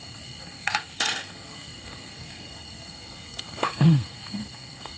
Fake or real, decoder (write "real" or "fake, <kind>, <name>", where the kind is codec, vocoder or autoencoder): fake, codec, SNAC